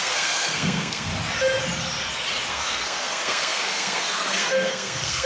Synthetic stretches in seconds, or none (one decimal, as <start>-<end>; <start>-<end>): 0.0-1.1; 2.5-5.3